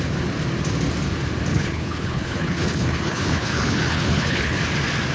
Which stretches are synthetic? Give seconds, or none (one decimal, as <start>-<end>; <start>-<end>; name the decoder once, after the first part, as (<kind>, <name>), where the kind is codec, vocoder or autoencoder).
1.5-4.6 (codec, HILCodec)